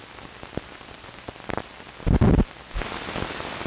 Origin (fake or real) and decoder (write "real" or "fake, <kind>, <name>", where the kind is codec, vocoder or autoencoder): real